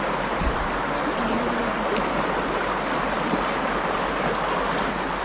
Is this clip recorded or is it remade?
recorded